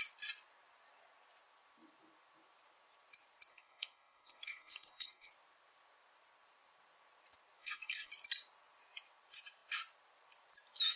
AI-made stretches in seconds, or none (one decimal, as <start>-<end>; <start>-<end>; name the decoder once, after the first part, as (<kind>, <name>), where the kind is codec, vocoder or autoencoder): 3.5-5.3 (codec, SNAC); 7.6-8.1